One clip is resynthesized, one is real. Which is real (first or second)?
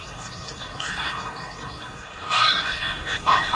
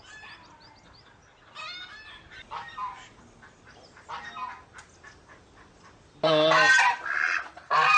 second